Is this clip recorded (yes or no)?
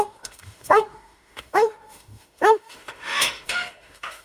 no